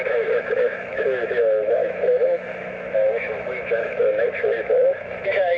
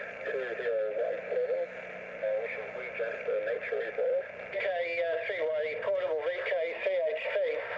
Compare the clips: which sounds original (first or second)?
second